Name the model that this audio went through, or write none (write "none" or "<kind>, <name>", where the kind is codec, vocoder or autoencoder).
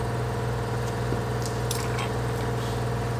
none